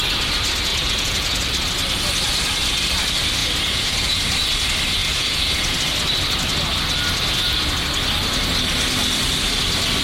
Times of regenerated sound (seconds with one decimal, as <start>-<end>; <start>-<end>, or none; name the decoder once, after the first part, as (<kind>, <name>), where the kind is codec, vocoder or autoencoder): 0.7-1.4 (vocoder, Vocos); 3.4-4.2; 5.0-5.8